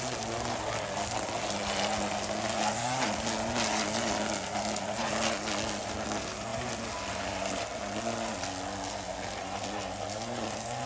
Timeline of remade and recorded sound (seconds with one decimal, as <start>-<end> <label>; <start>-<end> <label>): 0.0-10.9 recorded